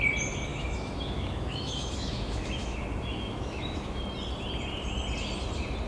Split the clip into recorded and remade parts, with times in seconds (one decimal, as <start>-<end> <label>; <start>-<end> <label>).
0.0-0.5 recorded; 0.5-4.0 remade; 4.0-5.9 recorded